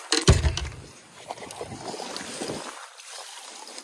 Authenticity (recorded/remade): recorded